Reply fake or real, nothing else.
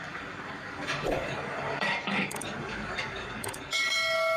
fake